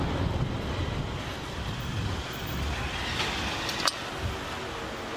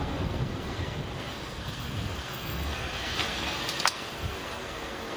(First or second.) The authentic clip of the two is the first